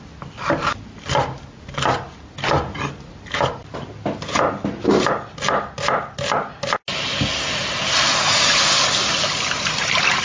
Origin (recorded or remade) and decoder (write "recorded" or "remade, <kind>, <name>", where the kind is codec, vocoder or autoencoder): recorded